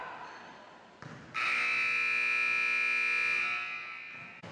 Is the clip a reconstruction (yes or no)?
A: no